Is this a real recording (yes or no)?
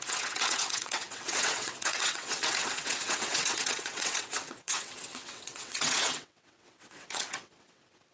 no